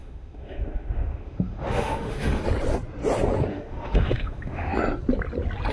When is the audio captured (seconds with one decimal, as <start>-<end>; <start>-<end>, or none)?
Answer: 2.4-3.5; 4.7-5.7